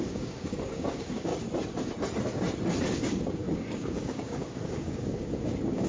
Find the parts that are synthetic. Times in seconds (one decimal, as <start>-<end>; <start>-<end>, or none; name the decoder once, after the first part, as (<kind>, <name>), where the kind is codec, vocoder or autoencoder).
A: 0.0-1.3 (codec, DAC); 2.9-5.9